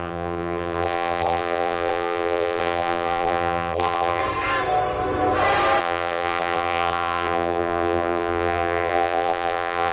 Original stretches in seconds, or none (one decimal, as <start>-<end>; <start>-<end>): 4.2-5.8